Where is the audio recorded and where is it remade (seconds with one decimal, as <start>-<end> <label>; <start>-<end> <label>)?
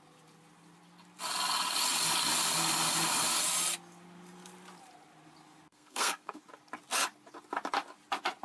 0.0-5.7 recorded; 5.7-6.4 remade; 6.4-8.4 recorded